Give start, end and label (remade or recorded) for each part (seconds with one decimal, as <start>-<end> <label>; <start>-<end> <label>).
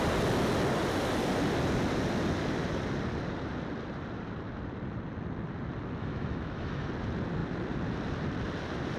0.0-6.0 recorded; 6.0-6.9 remade; 6.9-9.0 recorded